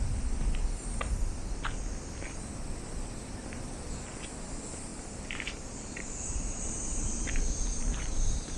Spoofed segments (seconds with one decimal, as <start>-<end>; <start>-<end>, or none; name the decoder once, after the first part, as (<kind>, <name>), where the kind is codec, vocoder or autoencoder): 4.9-8.6 (vocoder, BigVGAN v2)